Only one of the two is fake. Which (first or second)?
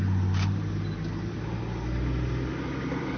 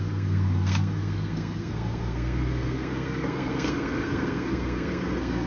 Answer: second